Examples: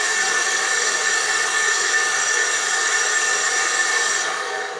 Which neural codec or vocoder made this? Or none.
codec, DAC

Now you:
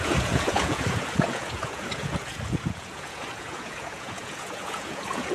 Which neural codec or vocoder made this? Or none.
vocoder, Vocos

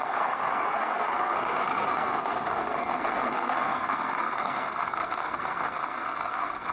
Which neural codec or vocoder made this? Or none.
codec, SNAC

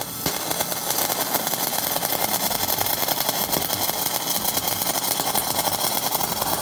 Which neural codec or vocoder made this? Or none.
none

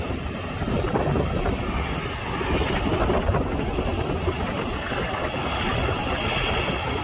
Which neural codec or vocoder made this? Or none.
none